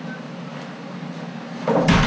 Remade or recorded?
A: recorded